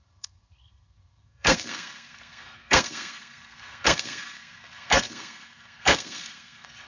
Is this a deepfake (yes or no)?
yes